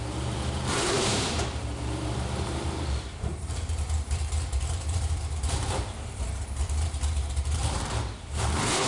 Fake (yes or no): yes